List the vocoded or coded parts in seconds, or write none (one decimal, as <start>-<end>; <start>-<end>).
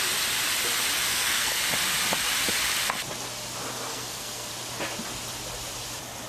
1.1-1.6; 3.9-4.5